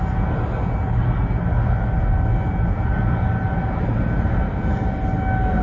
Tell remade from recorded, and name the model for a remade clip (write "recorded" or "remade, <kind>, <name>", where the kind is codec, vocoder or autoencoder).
recorded